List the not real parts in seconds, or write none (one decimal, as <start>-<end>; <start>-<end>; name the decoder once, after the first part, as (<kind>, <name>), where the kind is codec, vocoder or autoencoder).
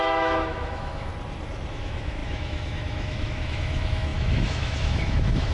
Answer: 0.0-1.1 (autoencoder, DAC-VAE); 1.7-5.5